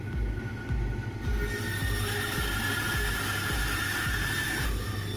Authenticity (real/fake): real